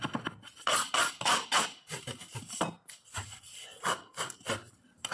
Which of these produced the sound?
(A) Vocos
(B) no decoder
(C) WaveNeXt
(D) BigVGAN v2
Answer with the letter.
B